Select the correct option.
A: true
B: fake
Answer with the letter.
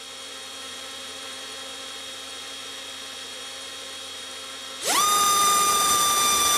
B